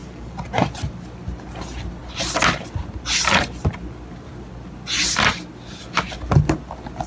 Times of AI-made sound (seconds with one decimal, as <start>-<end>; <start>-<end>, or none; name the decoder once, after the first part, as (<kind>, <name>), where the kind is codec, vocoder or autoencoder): 0.0-0.7 (vocoder, BigVGAN v2)